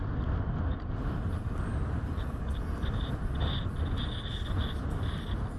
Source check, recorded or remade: recorded